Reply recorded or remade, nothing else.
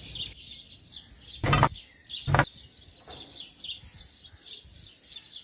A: recorded